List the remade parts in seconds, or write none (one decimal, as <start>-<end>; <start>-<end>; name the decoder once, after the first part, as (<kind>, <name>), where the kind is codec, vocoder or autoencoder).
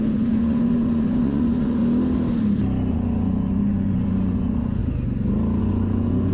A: 0.0-1.8 (vocoder, Vocos); 2.9-4.8; 5.6-6.3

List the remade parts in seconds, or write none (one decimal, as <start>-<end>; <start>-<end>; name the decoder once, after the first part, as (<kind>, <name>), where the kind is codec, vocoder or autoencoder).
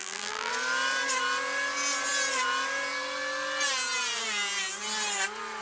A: 0.0-0.5 (vocoder, BigVGAN v2)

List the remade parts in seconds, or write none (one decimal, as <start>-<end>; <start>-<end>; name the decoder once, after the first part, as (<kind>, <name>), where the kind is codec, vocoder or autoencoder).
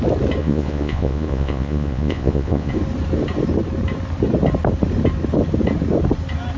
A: 0.4-2.7 (vocoder, Vocos)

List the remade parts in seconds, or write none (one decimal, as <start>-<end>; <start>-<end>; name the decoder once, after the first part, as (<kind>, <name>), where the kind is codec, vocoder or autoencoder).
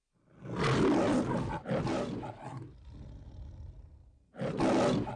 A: none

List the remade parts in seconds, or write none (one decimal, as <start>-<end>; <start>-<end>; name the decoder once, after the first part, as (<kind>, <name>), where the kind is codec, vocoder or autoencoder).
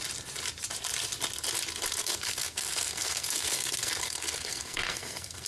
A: 2.0-5.5 (codec, SNAC)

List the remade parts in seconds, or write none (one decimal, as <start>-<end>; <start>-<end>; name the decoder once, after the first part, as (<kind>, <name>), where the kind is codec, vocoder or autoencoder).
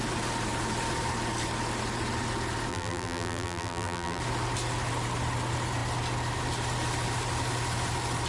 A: 2.7-4.2 (vocoder, BigVGAN v2)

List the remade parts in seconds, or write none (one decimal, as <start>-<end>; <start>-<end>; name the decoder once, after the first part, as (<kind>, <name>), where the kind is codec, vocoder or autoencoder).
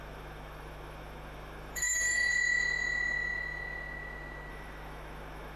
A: 0.0-2.3 (autoencoder, DAC-VAE); 4.5-5.6